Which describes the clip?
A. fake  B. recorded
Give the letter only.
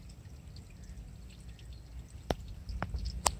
B